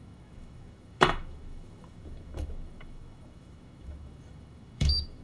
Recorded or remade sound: remade